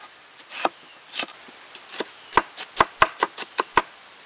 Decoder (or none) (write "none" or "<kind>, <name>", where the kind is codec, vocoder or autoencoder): none